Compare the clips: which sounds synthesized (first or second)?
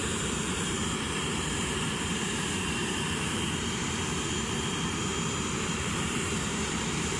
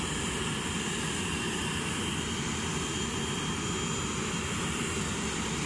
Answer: first